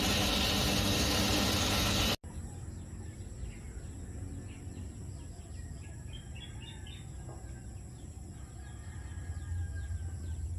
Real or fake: real